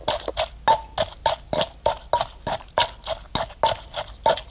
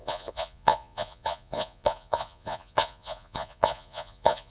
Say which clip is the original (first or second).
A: first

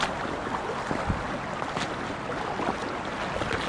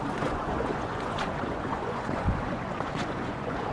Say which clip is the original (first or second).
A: first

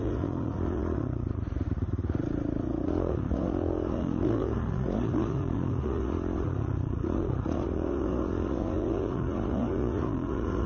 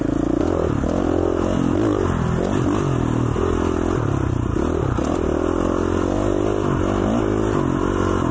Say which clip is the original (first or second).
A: second